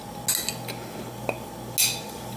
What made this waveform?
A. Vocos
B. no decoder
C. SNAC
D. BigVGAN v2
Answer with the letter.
B